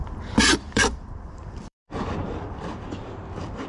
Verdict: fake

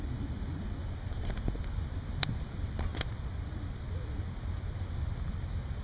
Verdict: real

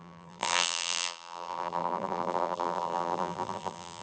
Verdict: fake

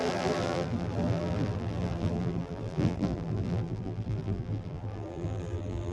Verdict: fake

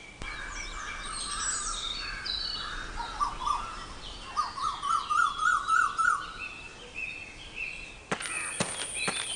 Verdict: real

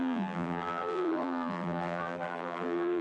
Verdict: fake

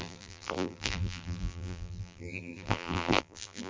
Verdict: fake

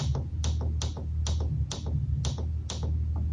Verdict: real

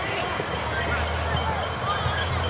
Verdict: real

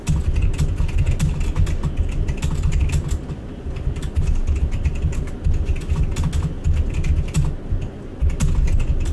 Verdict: real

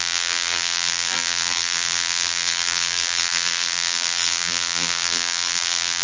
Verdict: fake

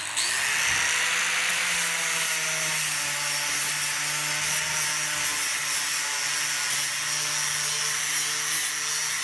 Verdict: real